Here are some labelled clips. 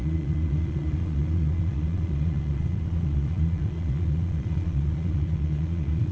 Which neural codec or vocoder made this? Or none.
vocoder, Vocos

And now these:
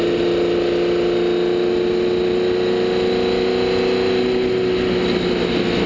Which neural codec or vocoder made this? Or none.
none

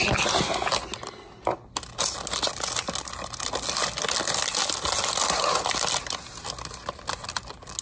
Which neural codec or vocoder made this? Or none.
none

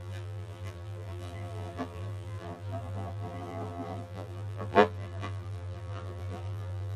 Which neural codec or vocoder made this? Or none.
vocoder, BigVGAN v2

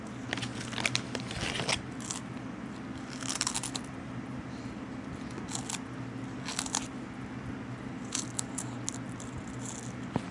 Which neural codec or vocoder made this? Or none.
none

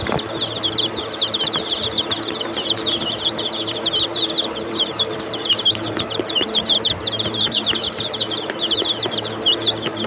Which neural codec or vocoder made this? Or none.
vocoder, BigVGAN v2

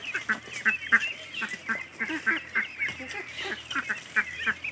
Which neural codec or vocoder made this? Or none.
none